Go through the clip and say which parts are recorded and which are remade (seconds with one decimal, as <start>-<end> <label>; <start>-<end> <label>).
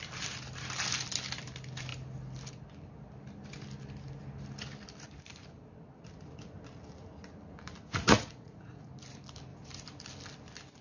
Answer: 0.0-7.8 recorded; 7.8-8.9 remade; 8.9-10.8 recorded